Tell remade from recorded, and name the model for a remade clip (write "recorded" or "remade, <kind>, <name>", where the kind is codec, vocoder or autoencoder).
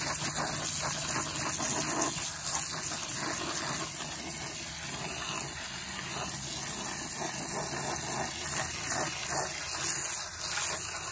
recorded